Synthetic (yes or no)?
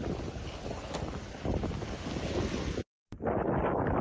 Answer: no